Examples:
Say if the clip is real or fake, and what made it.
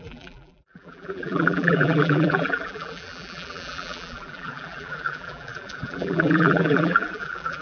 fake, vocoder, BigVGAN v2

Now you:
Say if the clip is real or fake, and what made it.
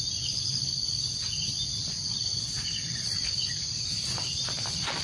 fake, vocoder, BigVGAN v2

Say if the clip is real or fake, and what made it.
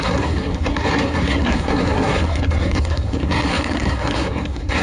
fake, codec, SNAC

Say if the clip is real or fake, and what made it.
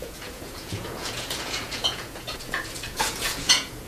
fake, vocoder, Vocos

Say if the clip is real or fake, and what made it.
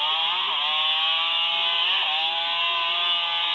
real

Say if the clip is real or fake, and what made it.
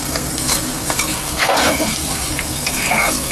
fake, codec, SNAC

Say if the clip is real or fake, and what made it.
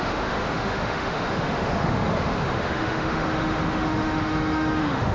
fake, autoencoder, DAC-VAE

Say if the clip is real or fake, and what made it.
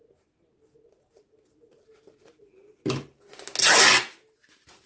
real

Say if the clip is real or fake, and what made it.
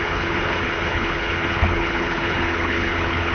fake, codec, HILCodec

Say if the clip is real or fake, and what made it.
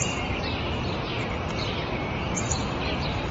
fake, vocoder, BigVGAN v2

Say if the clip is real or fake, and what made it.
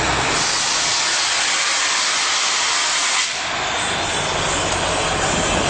real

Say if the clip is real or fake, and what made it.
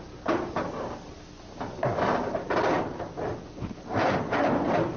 real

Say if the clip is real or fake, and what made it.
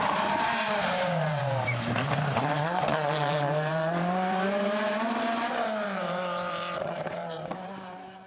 fake, vocoder, BigVGAN v2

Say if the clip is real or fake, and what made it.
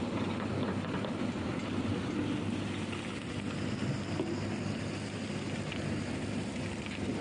real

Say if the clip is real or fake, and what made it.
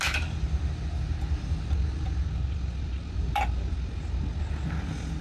real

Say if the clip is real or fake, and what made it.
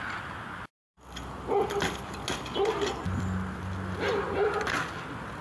real